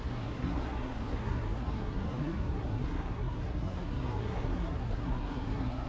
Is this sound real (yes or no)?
no